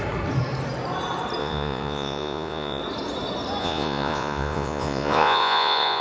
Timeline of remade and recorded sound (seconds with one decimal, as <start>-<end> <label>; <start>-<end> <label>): 0.0-1.4 recorded; 1.4-2.8 remade; 2.8-3.6 recorded; 3.6-6.0 remade

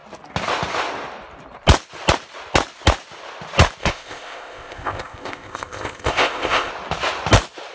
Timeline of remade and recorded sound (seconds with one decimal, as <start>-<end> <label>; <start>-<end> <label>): 0.0-3.8 recorded; 3.8-6.7 remade; 6.7-7.7 recorded

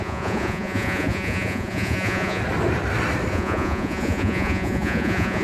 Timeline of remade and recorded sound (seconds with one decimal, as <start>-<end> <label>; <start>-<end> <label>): 0.0-2.4 remade; 2.4-3.3 recorded; 3.3-5.4 remade

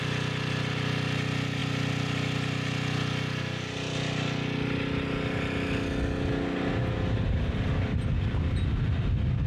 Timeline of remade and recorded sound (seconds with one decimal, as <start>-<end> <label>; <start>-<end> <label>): 0.0-9.5 recorded

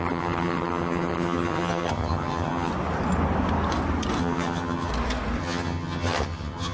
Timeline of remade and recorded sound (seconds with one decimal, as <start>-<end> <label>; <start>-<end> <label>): 0.0-2.7 remade; 2.7-4.2 recorded; 4.2-4.9 remade; 4.9-5.4 recorded; 5.4-6.7 remade

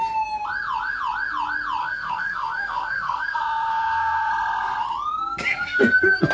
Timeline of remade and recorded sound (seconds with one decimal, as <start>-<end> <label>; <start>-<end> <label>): 0.0-1.8 recorded; 1.8-4.3 remade; 4.3-5.5 recorded; 5.5-6.3 remade

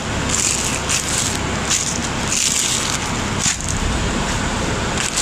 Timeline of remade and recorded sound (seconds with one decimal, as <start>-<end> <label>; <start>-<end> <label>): 0.0-5.2 recorded

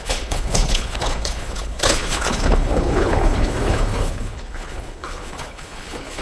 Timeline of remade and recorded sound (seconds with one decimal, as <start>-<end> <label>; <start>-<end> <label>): 0.0-6.2 remade